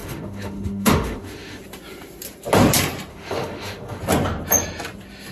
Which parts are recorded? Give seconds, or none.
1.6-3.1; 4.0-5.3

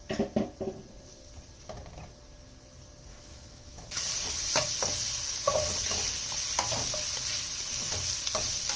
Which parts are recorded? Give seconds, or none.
0.0-3.1; 4.0-8.8

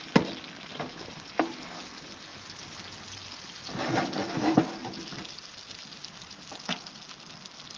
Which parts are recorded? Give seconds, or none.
0.0-7.8

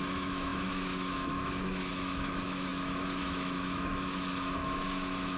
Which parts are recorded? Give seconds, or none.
none

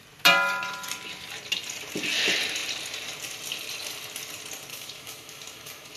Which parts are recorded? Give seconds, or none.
0.0-4.7